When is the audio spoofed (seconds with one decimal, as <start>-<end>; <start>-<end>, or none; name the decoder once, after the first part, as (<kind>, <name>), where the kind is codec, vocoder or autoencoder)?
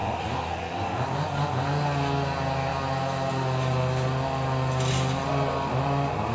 0.0-0.5 (vocoder, BigVGAN v2)